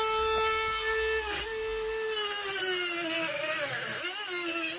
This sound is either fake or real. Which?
real